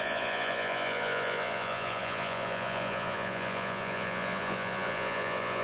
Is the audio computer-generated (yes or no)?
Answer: yes